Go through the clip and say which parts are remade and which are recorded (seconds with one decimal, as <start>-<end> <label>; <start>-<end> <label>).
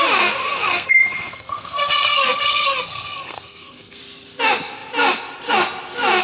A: 0.0-0.4 recorded; 0.4-4.0 remade; 4.0-6.2 recorded